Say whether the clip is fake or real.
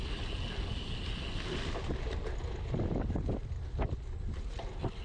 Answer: real